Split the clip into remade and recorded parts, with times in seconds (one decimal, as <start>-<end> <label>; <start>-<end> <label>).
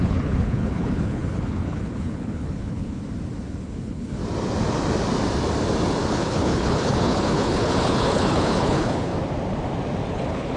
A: 0.0-3.0 remade; 3.0-3.6 recorded; 3.6-4.2 remade; 4.2-6.1 recorded; 6.1-9.1 remade; 9.1-10.1 recorded; 10.1-10.6 remade